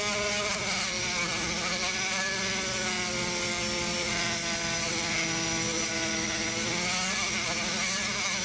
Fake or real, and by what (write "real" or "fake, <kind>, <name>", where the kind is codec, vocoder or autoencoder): real